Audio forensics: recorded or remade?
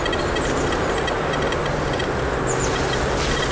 recorded